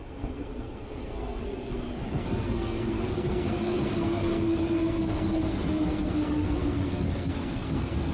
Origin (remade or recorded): remade